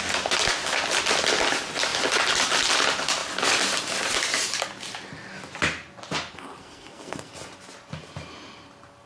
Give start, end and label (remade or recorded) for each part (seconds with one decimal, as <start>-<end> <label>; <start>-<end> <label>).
0.0-6.3 recorded; 6.3-7.3 remade; 7.3-9.1 recorded